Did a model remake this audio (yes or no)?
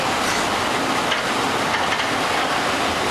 no